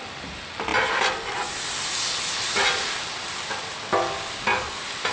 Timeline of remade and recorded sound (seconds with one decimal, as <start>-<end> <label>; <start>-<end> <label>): 0.0-5.1 recorded